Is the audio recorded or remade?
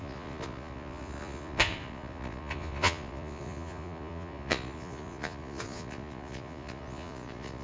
remade